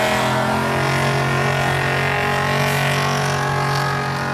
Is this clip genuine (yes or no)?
yes